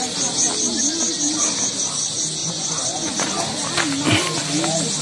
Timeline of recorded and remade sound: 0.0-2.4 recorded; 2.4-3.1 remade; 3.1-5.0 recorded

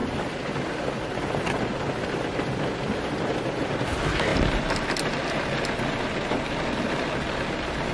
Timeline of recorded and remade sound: 0.0-7.9 recorded